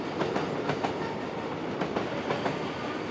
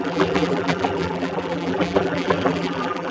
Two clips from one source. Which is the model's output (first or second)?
second